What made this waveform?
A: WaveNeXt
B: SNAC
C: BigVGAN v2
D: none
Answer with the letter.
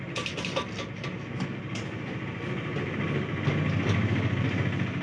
D